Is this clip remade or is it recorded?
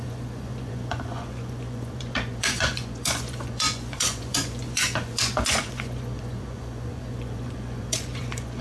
remade